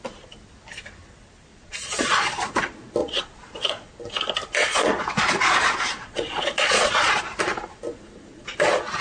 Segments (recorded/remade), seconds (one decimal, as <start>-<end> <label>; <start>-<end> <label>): 0.0-1.5 recorded; 1.5-2.5 remade; 2.5-3.0 recorded; 3.0-4.0 remade; 4.0-4.6 recorded; 4.6-7.2 remade; 7.2-9.0 recorded